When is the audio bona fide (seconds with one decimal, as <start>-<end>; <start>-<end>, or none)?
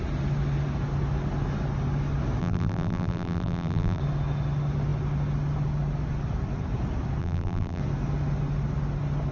0.0-2.4; 4.0-7.2; 7.8-9.3